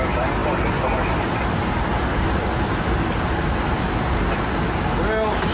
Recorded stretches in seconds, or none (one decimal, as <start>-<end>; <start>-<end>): 0.0-5.5